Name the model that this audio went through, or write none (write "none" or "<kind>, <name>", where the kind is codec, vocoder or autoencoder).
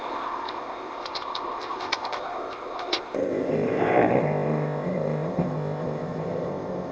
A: codec, ZipCodec